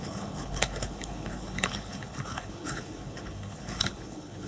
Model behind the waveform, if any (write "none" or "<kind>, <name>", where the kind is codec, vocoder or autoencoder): codec, HILCodec